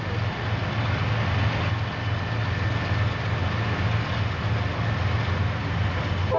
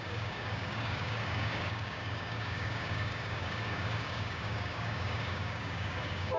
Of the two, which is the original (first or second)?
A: first